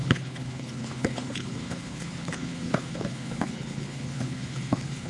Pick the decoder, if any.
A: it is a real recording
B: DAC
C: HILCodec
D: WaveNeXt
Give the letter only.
C